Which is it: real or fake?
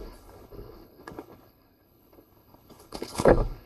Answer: fake